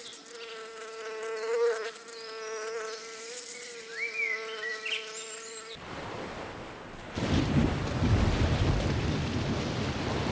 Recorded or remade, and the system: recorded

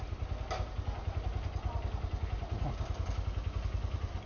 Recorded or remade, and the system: recorded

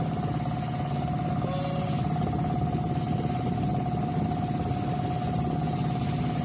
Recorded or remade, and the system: recorded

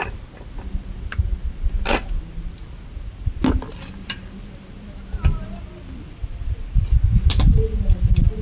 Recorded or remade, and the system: recorded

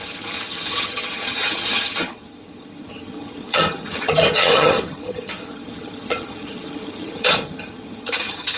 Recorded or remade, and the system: remade, vocoder, HiFi-GAN